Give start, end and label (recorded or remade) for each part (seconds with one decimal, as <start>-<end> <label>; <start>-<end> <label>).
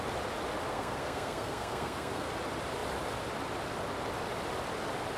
0.0-0.7 recorded; 0.7-2.3 remade; 2.3-5.2 recorded